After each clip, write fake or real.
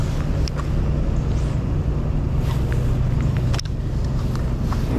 real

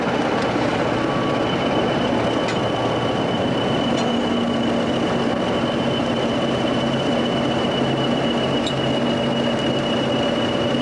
real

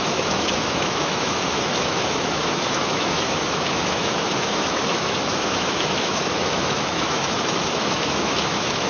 fake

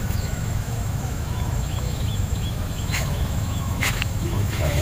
fake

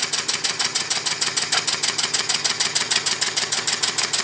real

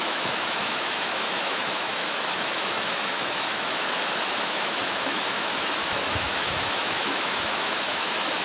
fake